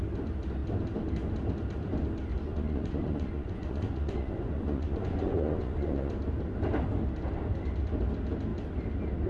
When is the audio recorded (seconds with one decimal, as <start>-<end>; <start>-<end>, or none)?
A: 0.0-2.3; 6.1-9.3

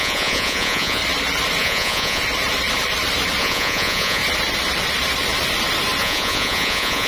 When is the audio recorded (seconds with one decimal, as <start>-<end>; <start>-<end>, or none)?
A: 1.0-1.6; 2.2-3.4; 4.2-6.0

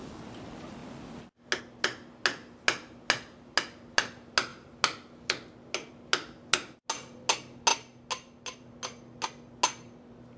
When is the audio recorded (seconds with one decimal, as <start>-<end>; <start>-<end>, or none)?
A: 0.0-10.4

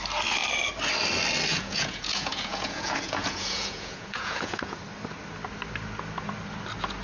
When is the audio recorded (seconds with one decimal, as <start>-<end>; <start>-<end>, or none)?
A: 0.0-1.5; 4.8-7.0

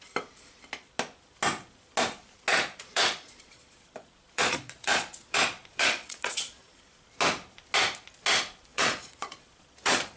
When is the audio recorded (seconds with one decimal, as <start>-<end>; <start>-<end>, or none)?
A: 0.0-2.5; 6.7-8.7

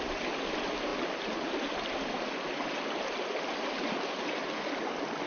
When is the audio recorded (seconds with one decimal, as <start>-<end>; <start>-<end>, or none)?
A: 0.0-5.3